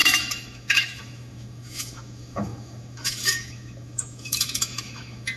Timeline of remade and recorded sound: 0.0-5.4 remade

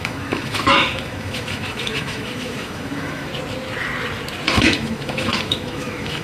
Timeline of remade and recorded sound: 0.0-3.3 remade; 3.3-4.5 recorded; 4.5-6.2 remade

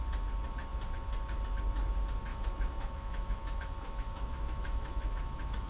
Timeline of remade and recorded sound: 0.0-2.3 recorded; 2.3-5.7 remade

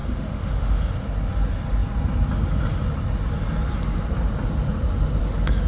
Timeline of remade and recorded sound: 0.0-0.8 remade; 0.8-5.7 recorded